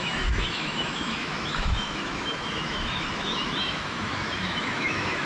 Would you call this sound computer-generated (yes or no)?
yes